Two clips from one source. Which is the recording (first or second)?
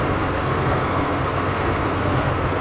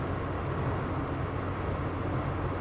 second